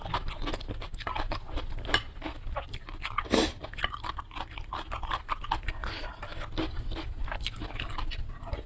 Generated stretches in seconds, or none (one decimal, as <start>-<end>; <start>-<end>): none